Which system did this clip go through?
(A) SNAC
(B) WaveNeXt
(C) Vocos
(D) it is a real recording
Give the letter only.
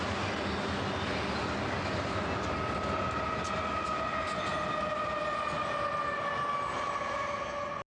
D